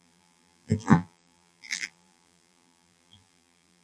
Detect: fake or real fake